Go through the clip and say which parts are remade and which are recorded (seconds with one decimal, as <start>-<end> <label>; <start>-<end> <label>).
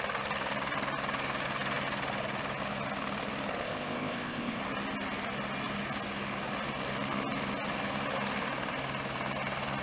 0.0-3.6 recorded; 3.6-4.6 remade; 4.6-9.8 recorded